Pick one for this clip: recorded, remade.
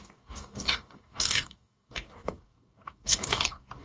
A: remade